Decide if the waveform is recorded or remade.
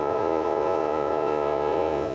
remade